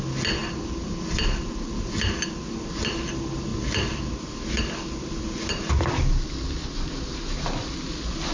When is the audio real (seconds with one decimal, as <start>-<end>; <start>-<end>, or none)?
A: 0.0-0.4; 2.1-3.5; 4.3-8.3

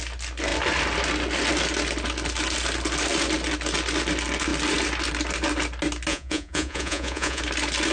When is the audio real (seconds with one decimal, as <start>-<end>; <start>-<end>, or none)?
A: 0.0-6.1; 7.4-7.9